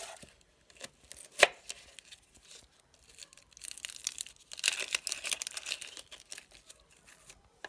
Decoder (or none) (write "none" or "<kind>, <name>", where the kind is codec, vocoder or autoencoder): none